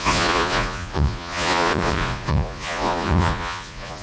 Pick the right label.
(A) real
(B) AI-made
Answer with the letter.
B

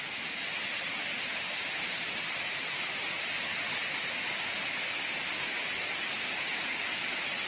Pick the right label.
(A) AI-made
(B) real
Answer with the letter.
B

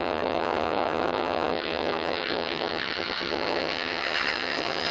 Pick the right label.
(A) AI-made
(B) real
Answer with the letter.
A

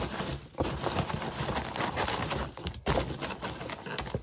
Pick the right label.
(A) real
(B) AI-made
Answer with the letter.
A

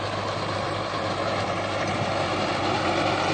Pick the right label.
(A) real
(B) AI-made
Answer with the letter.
A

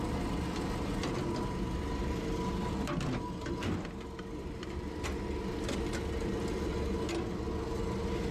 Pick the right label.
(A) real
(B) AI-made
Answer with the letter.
A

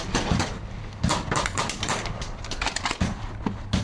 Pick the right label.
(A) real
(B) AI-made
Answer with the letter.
A